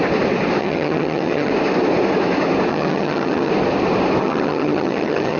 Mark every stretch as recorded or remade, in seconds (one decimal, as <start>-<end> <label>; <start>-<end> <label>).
0.0-0.6 recorded; 0.6-1.5 remade; 1.5-2.7 recorded; 2.7-3.5 remade; 3.5-4.2 recorded; 4.2-5.4 remade